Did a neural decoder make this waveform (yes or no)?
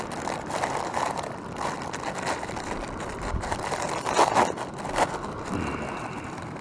no